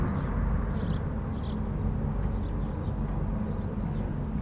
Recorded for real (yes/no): yes